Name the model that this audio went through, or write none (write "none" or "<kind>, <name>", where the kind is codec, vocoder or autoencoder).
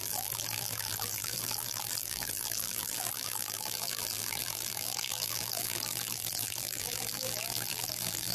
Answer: vocoder, BigVGAN v2